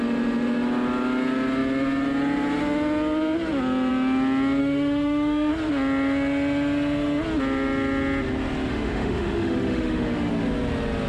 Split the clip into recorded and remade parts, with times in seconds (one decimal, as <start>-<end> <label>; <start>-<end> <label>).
0.0-4.6 recorded; 4.6-5.5 remade; 5.5-8.7 recorded; 8.7-10.3 remade; 10.3-11.1 recorded